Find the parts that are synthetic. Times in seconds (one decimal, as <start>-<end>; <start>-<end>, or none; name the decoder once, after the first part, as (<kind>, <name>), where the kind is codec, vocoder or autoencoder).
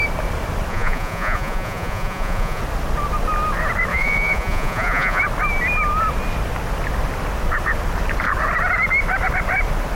0.7-2.6 (vocoder, Vocos); 3.9-5.2